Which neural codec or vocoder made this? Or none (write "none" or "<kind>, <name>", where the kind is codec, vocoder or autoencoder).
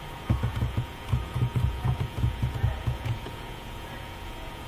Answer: vocoder, Vocos